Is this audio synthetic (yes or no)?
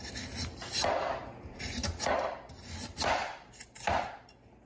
no